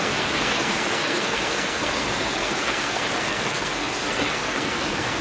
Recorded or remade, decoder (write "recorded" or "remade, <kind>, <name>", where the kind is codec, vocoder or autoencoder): remade, codec, SNAC